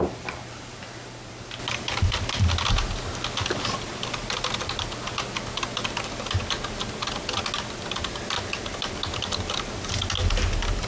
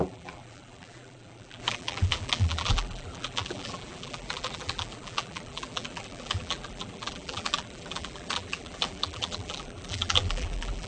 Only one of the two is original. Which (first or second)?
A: first